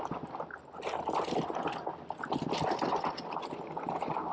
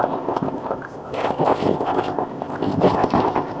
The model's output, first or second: second